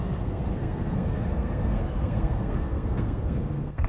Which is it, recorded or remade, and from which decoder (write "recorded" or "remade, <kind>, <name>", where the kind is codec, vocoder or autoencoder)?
remade, codec, SNAC